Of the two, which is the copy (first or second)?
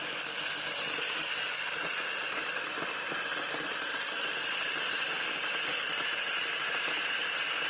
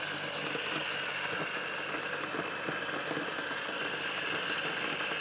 first